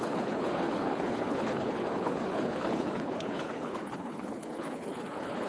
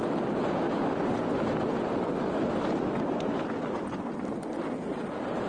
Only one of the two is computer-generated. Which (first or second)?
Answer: first